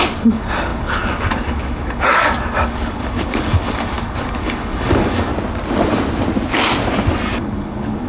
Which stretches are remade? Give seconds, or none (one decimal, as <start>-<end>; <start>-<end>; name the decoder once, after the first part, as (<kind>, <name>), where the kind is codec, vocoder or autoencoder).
0.0-5.3 (codec, DAC); 7.4-8.1